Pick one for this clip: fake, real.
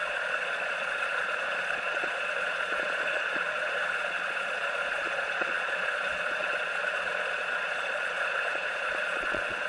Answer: fake